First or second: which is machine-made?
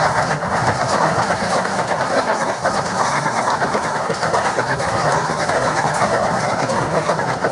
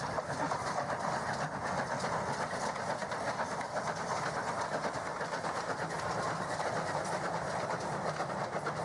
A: first